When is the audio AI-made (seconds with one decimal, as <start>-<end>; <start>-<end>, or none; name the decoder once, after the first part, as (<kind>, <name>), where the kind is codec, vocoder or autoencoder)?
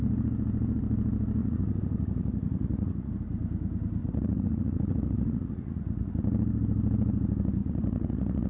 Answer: 1.4-3.1 (vocoder, Vocos); 4.0-6.1; 7.6-8.5